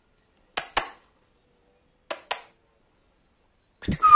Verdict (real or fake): real